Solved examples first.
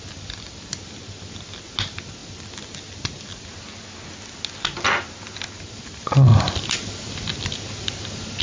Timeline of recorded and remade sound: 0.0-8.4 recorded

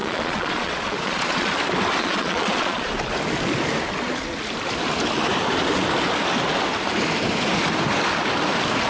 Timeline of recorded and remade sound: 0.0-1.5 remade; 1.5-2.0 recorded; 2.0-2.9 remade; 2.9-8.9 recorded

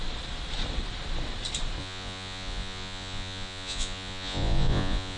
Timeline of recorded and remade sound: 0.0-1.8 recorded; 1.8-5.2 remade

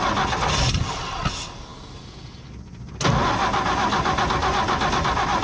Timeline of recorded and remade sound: 0.0-5.4 recorded

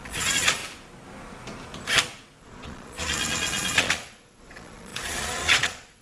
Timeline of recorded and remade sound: 0.0-0.6 remade; 0.6-2.4 recorded; 2.4-6.0 remade

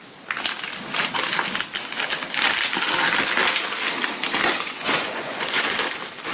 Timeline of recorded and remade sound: 0.0-4.4 recorded; 4.4-5.6 remade; 5.6-6.3 recorded

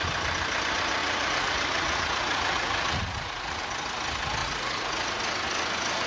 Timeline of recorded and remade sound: 0.0-1.0 recorded; 1.0-3.6 remade; 3.6-4.4 recorded; 4.4-5.2 remade; 5.2-6.1 recorded